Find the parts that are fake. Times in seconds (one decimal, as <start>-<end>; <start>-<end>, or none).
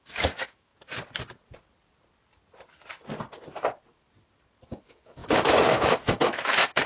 0.0-0.7; 4.7-6.9